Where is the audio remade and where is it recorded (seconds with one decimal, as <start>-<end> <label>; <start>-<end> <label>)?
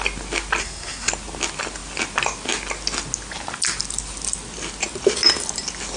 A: 0.0-0.6 recorded; 0.6-1.1 remade; 1.1-6.0 recorded